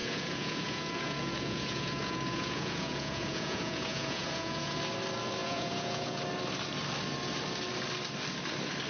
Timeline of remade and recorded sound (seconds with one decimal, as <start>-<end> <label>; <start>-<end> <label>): 0.0-4.8 remade; 4.8-5.4 recorded; 5.4-6.2 remade; 6.2-8.9 recorded